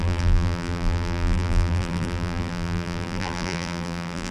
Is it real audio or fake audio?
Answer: fake